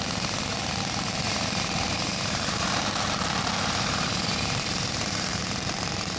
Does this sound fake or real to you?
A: fake